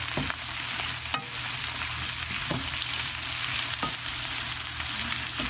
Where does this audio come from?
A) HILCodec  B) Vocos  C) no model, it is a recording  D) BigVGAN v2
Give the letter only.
C